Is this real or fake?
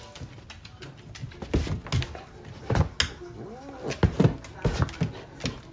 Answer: real